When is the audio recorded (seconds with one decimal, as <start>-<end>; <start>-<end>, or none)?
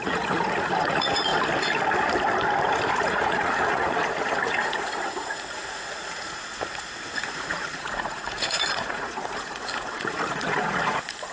1.3-2.9